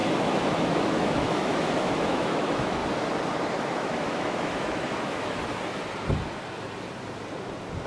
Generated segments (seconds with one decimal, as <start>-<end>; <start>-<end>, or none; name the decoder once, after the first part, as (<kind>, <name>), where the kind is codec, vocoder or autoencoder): 0.0-2.8 (autoencoder, DAC-VAE); 3.6-5.4